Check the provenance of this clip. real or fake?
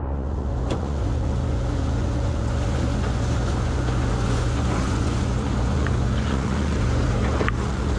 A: fake